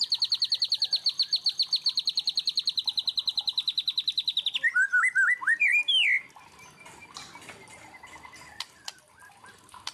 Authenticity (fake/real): real